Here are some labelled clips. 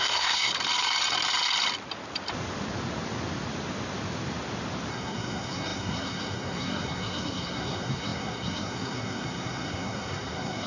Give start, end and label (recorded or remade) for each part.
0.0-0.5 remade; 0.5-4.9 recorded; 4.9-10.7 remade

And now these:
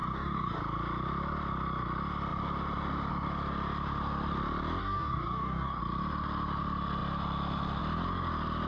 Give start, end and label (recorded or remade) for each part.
0.0-0.6 remade; 0.6-4.8 recorded; 4.8-5.8 remade; 5.8-8.7 recorded

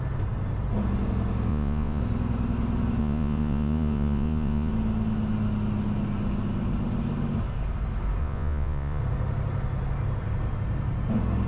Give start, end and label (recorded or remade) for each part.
0.0-1.5 recorded; 1.5-2.0 remade; 2.0-3.0 recorded; 3.0-4.7 remade; 4.7-8.2 recorded; 8.2-9.0 remade; 9.0-11.5 recorded

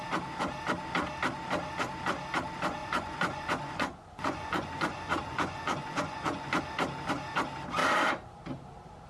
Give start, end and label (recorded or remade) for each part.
0.0-2.8 recorded; 2.8-6.6 remade; 6.6-9.1 recorded

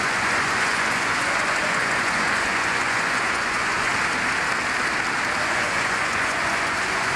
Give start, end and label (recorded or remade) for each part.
0.0-3.9 remade; 3.9-5.4 recorded; 5.4-7.2 remade

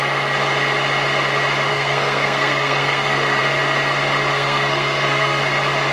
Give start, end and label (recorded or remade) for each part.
0.0-1.7 recorded; 1.7-3.4 remade; 3.4-4.3 recorded; 4.3-5.4 remade; 5.4-5.9 recorded